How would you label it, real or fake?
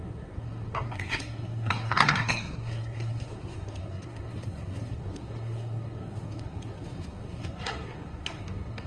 fake